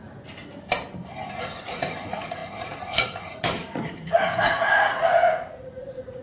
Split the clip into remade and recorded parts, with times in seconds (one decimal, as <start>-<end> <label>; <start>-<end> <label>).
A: 0.0-1.4 recorded; 1.4-6.2 remade

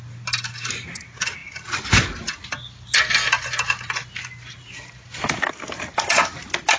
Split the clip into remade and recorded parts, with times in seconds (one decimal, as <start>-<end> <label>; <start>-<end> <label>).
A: 0.0-6.8 recorded

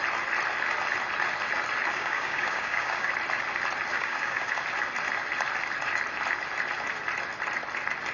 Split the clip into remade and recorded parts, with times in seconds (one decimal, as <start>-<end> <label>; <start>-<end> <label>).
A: 0.0-1.9 recorded; 1.9-3.1 remade; 3.1-3.9 recorded; 3.9-4.5 remade; 4.5-8.1 recorded